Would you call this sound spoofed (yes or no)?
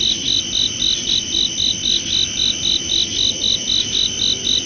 no